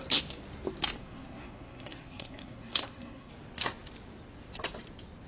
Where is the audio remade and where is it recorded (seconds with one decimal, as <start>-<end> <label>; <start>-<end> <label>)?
0.0-1.0 recorded; 1.0-3.3 remade; 3.3-5.3 recorded